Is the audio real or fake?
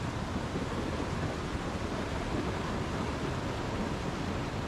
real